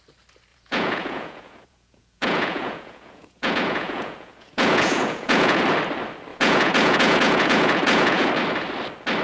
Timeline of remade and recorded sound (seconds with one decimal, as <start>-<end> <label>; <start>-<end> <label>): 0.0-0.5 recorded; 0.5-5.6 remade; 5.6-6.3 recorded; 6.3-8.3 remade; 8.3-9.2 recorded